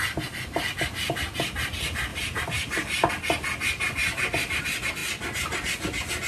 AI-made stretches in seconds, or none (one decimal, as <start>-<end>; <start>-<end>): 2.1-3.1; 4.0-4.6